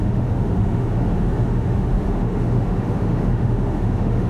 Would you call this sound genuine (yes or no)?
no